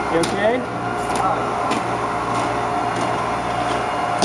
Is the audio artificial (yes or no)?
no